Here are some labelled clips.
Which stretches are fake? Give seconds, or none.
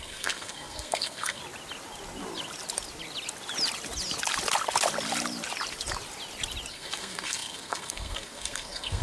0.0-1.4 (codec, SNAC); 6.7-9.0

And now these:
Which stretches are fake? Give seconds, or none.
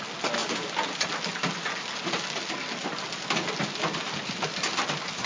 none